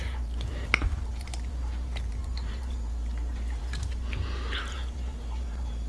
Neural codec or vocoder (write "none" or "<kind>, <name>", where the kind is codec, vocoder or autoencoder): vocoder, BigVGAN v2